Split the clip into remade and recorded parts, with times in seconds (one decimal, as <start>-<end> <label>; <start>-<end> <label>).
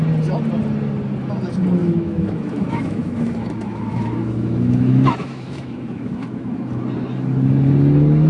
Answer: 0.0-1.8 recorded; 1.8-6.8 remade; 6.8-8.3 recorded